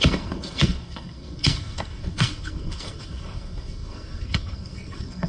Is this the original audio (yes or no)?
no